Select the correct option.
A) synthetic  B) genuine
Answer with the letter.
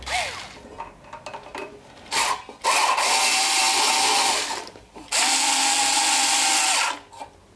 B